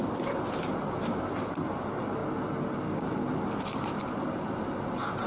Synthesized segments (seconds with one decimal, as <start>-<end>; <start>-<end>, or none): none